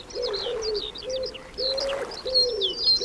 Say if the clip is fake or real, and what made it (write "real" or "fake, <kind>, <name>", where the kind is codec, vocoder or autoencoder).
real